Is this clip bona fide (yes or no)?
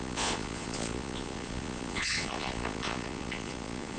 no